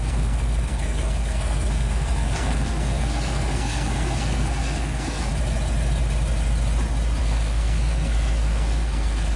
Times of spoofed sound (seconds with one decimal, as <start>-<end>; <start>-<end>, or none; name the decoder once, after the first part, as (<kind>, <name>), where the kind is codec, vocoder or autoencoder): 0.0-5.3 (codec, SNAC); 7.2-9.4